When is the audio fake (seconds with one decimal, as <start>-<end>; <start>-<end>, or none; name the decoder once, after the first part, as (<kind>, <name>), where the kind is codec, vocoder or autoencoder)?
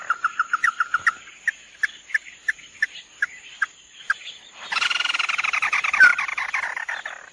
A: none